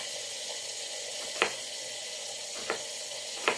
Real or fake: fake